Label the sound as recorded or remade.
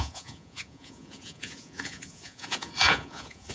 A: remade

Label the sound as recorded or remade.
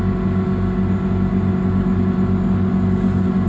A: recorded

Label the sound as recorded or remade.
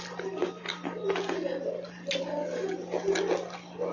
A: recorded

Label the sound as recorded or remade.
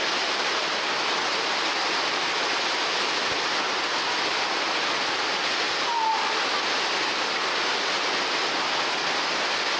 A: recorded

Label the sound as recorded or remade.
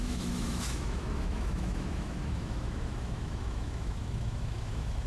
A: remade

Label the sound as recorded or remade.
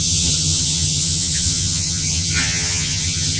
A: remade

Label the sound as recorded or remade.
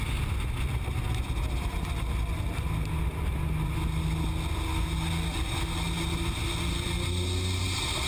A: recorded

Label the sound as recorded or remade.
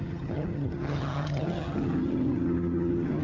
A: remade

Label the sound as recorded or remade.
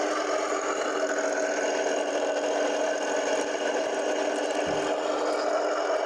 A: recorded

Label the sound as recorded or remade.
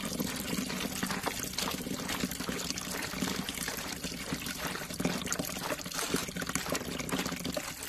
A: recorded